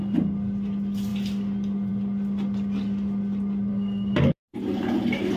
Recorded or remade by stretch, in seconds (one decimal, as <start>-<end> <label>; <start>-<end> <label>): 0.0-3.7 recorded; 3.7-4.4 remade; 4.4-5.4 recorded